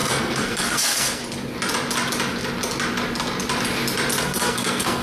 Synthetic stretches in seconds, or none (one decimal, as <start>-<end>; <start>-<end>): 0.0-1.2; 4.2-5.0